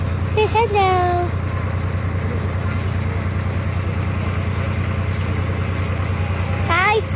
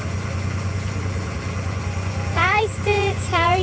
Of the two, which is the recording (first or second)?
first